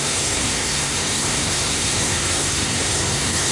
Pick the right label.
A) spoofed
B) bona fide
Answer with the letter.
A